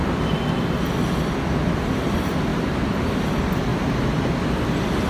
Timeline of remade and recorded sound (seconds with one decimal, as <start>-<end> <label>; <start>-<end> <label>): 0.0-5.1 recorded